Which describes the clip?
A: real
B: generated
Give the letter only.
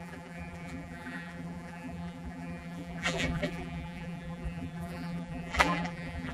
B